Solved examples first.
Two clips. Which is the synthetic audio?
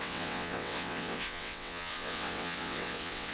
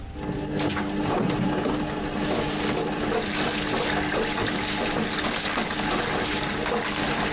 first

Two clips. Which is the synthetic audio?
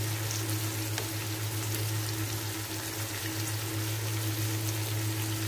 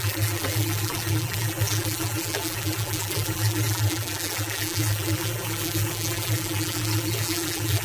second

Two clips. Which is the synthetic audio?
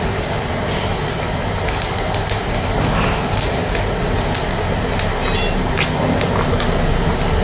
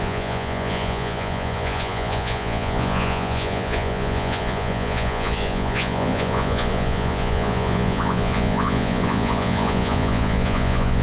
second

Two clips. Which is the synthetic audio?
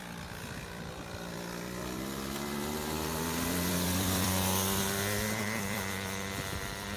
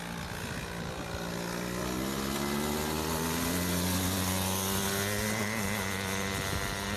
first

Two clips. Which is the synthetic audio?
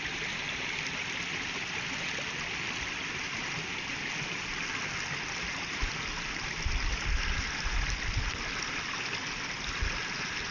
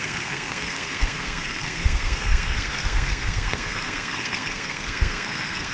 second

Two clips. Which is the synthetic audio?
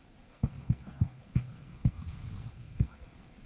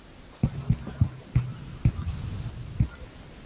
first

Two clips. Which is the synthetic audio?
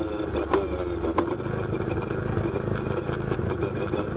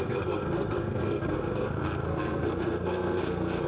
second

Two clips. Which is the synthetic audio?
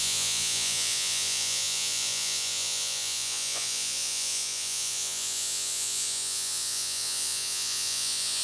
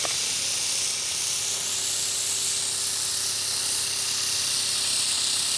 first